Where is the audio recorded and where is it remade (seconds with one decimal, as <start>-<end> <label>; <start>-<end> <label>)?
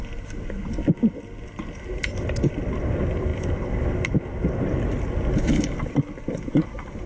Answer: 0.0-7.1 recorded